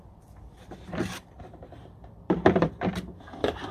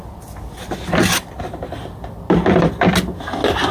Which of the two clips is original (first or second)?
second